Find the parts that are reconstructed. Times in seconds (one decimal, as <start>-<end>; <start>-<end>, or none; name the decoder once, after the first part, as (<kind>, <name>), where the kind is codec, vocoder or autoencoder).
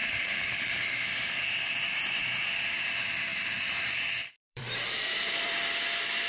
0.0-2.2 (vocoder, BigVGAN v2); 3.3-3.8; 4.2-5.6